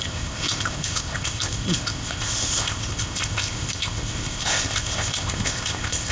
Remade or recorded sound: remade